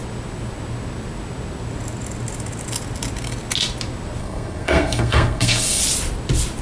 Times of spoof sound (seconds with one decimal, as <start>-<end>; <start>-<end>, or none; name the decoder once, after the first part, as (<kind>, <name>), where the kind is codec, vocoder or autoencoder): 4.2-5.8 (codec, SNAC)